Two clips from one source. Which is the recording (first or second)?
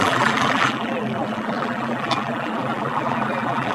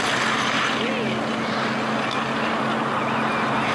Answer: second